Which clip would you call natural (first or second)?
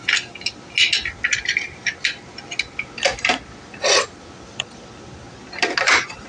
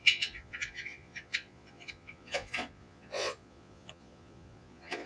first